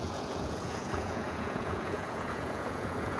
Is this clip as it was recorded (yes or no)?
no